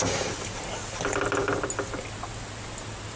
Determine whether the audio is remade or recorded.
recorded